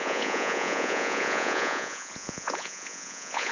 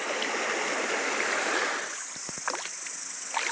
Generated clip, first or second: first